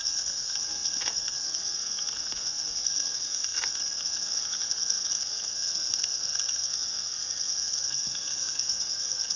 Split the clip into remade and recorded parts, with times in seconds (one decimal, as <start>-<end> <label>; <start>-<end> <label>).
0.0-9.4 remade